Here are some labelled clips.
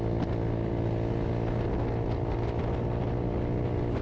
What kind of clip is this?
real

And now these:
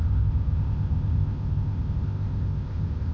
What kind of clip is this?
fake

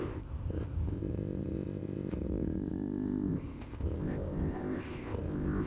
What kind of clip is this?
fake